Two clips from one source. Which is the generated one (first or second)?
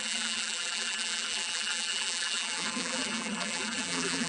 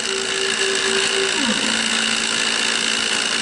first